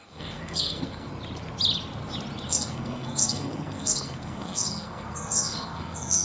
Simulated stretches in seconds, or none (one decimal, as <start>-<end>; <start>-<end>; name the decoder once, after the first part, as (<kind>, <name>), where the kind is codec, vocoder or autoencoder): 0.0-1.1 (codec, SNAC); 2.5-6.2